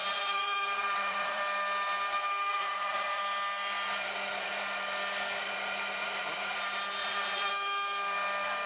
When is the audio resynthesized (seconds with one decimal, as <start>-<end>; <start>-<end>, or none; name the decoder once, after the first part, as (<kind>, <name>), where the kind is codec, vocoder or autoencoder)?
0.0-1.4 (vocoder, Vocos); 2.5-3.2; 7.0-7.5